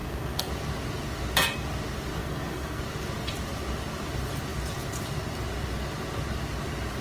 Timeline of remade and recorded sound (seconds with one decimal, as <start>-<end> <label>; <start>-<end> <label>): 0.0-0.5 remade; 0.5-2.2 recorded; 2.2-2.8 remade; 2.8-7.0 recorded